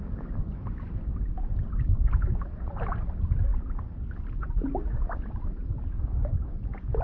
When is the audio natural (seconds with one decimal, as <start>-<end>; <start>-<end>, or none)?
0.0-7.0